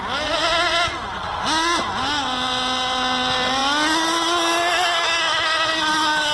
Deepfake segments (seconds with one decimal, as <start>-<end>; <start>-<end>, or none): none